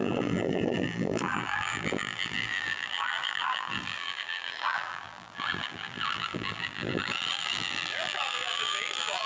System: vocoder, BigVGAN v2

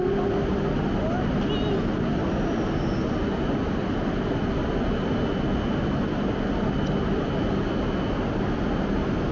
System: none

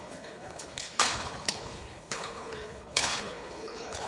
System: codec, HILCodec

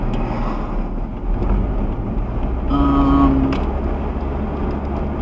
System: none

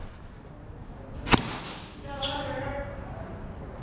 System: none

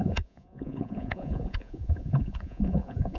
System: vocoder, Vocos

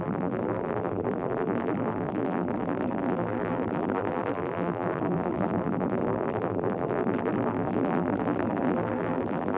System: vocoder, BigVGAN v2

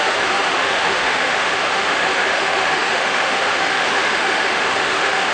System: autoencoder, DAC-VAE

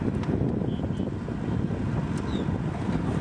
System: none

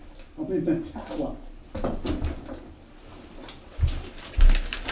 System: none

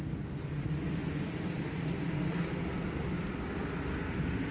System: none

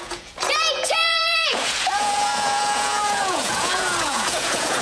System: vocoder, Vocos